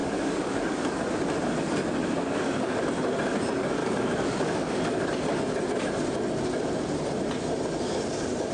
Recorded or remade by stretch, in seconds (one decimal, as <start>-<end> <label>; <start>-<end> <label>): 0.0-1.1 remade; 1.1-2.0 recorded; 2.0-2.8 remade; 2.8-3.8 recorded; 3.8-5.1 remade; 5.1-8.5 recorded